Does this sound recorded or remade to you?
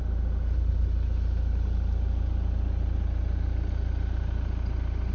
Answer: recorded